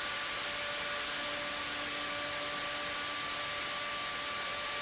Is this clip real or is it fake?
real